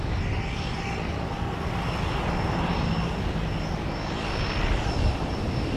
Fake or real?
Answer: real